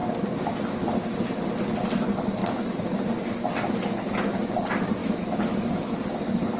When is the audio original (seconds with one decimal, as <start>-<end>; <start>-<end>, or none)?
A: 0.0-5.0; 5.9-6.6